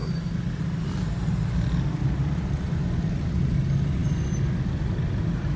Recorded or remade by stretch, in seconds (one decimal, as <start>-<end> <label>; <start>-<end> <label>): 0.0-5.6 recorded